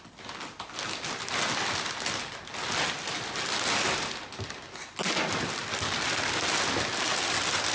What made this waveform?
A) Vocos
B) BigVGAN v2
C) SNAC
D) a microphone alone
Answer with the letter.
D